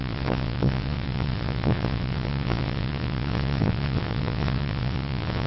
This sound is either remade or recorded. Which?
remade